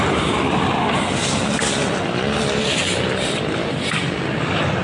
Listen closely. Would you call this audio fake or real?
real